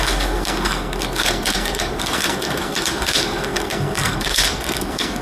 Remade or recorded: remade